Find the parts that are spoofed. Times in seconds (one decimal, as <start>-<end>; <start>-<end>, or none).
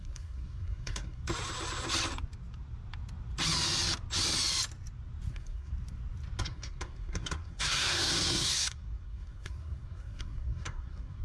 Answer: 0.0-1.2; 5.3-5.7; 6.4-11.2